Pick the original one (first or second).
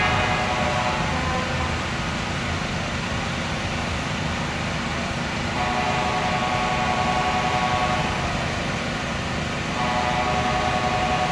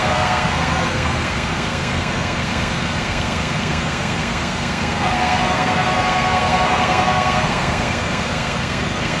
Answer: first